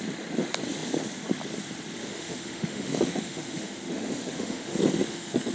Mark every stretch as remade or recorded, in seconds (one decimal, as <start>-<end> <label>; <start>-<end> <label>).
0.0-2.0 recorded; 2.0-5.5 remade

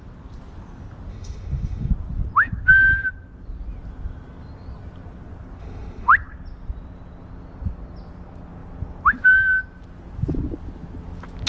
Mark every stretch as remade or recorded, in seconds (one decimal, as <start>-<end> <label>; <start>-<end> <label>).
0.0-1.1 recorded; 1.1-1.9 remade; 1.9-5.6 recorded; 5.6-6.1 remade; 6.1-11.5 recorded

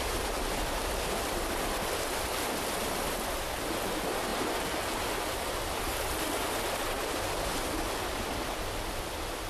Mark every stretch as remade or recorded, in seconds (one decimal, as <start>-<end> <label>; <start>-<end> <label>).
0.0-9.5 recorded

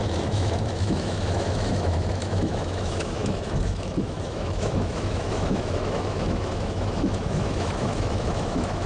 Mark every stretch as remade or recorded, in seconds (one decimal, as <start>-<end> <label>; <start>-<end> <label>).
0.0-8.9 remade

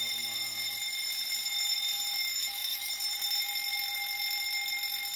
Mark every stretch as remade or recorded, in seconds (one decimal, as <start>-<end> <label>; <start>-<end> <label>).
0.0-2.3 recorded; 2.3-2.9 remade; 2.9-5.2 recorded

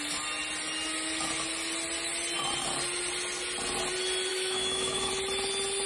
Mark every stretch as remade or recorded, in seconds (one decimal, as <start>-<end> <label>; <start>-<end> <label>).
0.0-4.3 recorded; 4.3-5.1 remade; 5.1-5.9 recorded

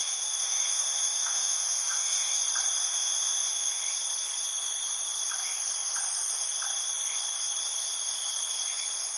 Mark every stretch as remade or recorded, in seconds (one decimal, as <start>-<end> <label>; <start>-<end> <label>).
0.0-2.4 remade; 2.4-2.8 recorded; 2.8-3.8 remade; 3.8-9.2 recorded

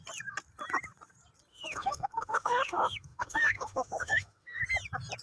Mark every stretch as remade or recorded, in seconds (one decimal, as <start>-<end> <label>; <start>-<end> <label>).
0.0-1.5 recorded; 1.5-4.6 remade; 4.6-5.2 recorded